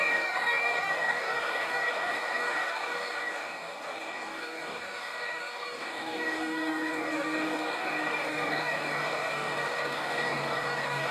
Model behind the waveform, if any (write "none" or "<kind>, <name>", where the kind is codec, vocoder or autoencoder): codec, DAC